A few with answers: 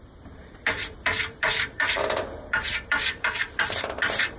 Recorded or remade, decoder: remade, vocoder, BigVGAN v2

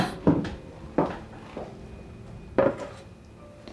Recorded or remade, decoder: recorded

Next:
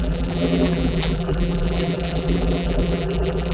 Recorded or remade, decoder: remade, vocoder, BigVGAN v2